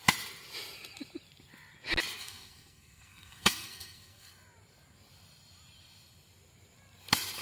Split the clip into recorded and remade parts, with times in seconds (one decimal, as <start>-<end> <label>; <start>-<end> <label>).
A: 0.0-2.2 recorded; 2.2-4.3 remade; 4.3-7.4 recorded

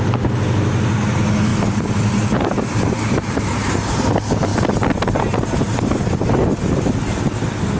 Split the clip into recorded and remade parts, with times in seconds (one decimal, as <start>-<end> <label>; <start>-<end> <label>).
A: 0.0-1.5 recorded; 1.5-3.5 remade; 3.5-7.8 recorded

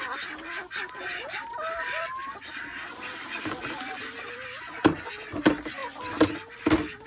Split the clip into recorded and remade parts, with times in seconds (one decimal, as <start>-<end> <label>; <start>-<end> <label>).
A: 0.0-7.1 recorded

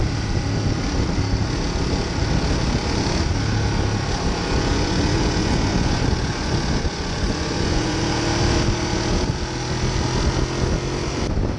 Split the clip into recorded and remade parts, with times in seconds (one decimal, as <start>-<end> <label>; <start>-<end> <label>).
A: 0.0-4.4 recorded; 4.4-8.0 remade; 8.0-11.6 recorded

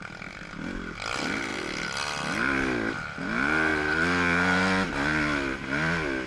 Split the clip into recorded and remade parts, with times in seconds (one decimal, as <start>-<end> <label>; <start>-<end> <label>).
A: 0.0-6.3 recorded

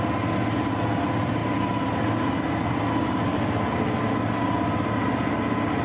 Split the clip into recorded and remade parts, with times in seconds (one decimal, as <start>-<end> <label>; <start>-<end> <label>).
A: 0.0-5.8 recorded

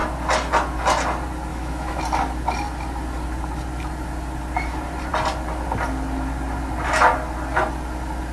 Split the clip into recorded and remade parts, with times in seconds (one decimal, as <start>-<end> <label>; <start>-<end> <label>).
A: 0.0-1.5 recorded; 1.5-2.0 remade; 2.0-8.3 recorded

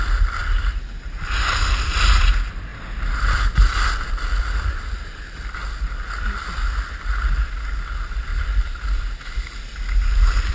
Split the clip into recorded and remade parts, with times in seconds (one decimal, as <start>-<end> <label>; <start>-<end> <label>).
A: 0.0-10.5 recorded